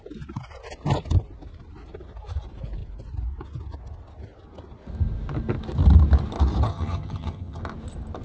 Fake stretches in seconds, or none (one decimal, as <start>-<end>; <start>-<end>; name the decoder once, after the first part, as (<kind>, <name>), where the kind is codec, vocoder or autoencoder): 6.7-7.6 (vocoder, HiFi-GAN)